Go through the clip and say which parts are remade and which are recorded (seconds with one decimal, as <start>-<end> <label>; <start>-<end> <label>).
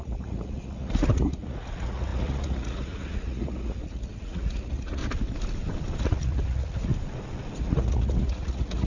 0.0-5.0 remade; 5.0-6.0 recorded; 6.0-6.9 remade; 6.9-7.6 recorded; 7.6-8.9 remade